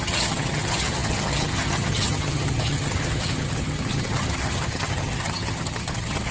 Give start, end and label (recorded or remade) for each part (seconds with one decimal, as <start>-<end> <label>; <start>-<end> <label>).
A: 0.0-6.3 remade